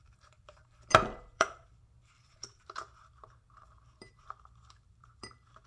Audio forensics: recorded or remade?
remade